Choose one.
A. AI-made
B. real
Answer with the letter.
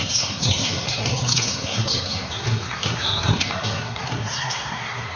A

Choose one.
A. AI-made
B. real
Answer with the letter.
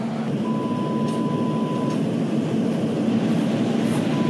B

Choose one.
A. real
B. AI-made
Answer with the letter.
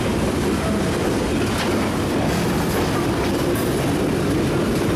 A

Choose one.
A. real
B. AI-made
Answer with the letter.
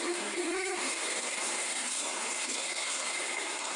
B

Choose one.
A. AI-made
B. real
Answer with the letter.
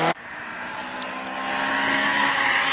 B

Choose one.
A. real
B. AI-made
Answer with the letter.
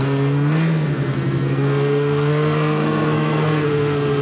B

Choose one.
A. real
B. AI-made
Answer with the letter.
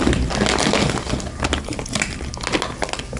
A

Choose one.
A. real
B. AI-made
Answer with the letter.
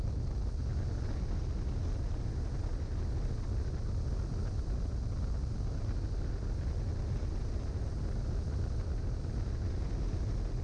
A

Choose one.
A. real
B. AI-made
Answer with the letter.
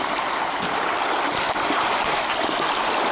A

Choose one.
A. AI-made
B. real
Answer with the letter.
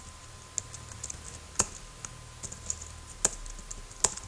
B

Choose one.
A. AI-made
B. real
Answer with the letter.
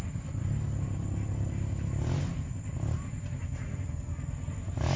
B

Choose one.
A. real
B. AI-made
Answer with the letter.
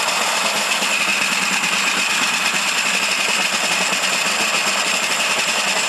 A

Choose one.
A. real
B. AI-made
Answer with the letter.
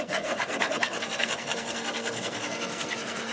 B